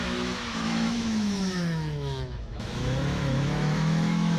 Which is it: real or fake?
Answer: fake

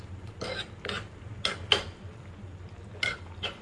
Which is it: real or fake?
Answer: real